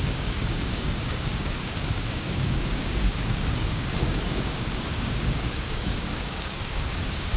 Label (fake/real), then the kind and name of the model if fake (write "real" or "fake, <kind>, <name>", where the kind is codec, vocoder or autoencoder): fake, codec, DAC